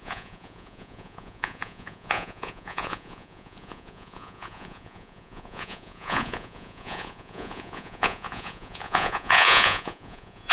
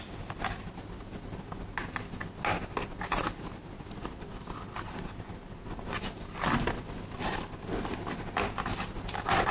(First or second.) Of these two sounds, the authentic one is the second